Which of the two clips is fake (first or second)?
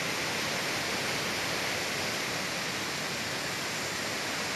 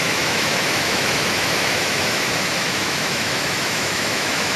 second